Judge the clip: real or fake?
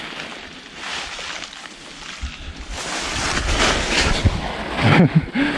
real